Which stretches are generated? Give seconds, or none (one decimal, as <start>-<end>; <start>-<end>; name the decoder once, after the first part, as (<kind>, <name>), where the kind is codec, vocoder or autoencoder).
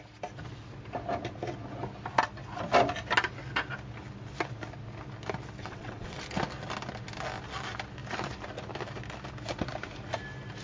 5.6-6.2 (vocoder, WaveNeXt)